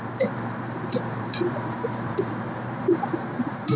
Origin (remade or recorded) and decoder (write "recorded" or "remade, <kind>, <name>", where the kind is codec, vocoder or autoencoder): remade, vocoder, BigVGAN v2